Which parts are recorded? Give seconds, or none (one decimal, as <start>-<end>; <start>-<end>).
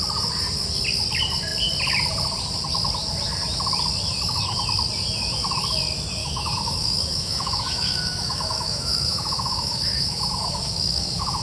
0.0-6.2